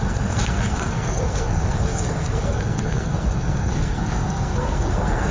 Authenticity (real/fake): fake